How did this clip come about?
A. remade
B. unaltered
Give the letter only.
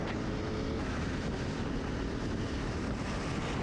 B